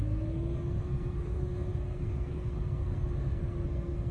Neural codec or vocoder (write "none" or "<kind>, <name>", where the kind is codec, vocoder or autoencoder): codec, SNAC